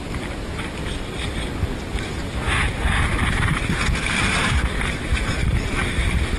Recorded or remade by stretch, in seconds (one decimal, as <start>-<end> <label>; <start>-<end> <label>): 0.0-0.8 remade; 0.8-4.2 recorded; 4.2-6.4 remade

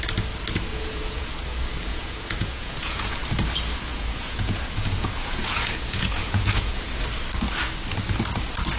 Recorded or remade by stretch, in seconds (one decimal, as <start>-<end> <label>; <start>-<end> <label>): 0.0-0.7 recorded; 0.7-1.3 remade; 1.3-1.9 recorded; 1.9-3.2 remade; 3.2-3.9 recorded; 3.9-7.0 remade; 7.0-8.8 recorded

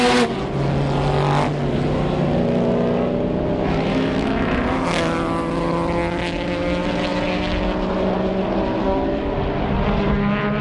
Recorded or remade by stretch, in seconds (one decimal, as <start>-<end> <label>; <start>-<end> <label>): 0.0-3.9 recorded; 3.9-4.6 remade; 4.6-10.6 recorded